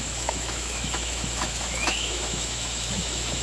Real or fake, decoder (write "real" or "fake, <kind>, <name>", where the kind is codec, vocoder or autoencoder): fake, autoencoder, DAC-VAE